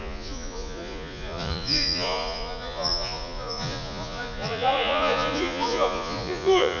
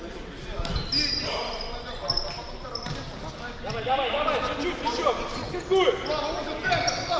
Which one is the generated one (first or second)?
first